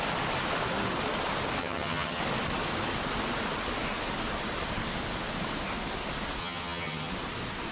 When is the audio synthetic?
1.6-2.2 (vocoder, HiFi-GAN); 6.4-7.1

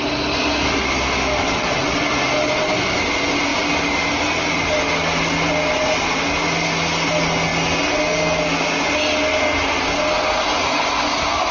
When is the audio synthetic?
1.4-2.0 (vocoder, WaveNeXt)

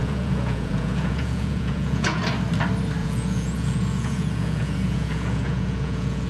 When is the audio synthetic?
0.0-2.2 (vocoder, Vocos); 3.0-6.3

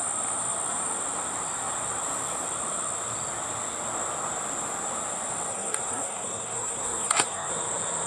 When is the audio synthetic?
5.5-7.5 (codec, SNAC)

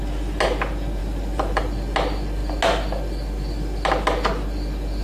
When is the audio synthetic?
1.0-1.6 (vocoder, BigVGAN v2)